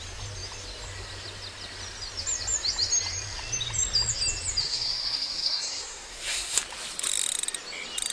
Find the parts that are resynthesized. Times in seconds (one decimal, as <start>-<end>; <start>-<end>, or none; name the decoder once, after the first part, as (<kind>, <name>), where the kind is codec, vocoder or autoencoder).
4.6-6.6 (codec, SNAC)

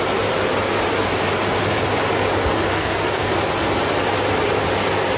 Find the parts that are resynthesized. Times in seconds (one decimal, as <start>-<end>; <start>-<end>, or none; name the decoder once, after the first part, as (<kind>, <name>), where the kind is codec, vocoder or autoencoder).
2.7-3.3 (codec, SNAC)

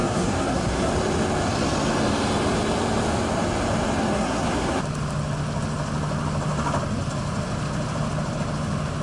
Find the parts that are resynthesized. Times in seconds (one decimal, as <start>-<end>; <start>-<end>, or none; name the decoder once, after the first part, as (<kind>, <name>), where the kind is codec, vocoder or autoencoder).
0.0-0.9 (codec, SNAC); 4.0-4.8

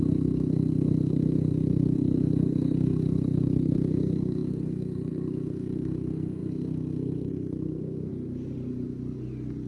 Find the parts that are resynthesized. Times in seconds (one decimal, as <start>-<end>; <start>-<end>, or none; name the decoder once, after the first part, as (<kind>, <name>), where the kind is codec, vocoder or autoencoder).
0.0-8.1 (codec, SNAC)

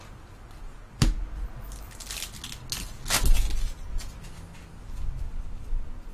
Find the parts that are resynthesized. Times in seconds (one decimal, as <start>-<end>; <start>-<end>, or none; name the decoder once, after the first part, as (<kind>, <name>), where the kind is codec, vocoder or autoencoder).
none

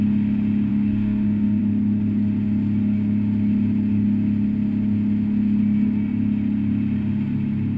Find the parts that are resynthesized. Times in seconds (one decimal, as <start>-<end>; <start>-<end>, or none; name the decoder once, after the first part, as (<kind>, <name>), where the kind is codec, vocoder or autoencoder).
0.7-1.6 (codec, SNAC)